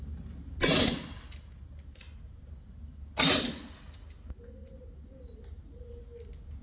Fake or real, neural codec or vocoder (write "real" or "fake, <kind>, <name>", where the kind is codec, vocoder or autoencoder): real